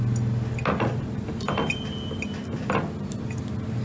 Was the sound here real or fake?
real